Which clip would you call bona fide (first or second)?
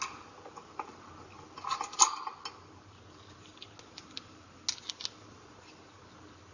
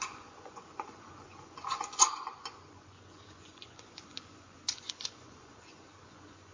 first